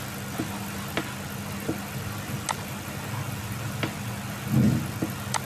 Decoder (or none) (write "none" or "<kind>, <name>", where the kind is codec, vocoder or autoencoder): none